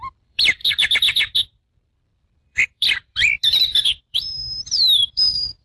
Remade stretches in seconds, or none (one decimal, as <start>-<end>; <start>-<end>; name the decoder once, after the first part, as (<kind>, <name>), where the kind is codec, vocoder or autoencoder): 0.0-5.6 (vocoder, BigVGAN v2)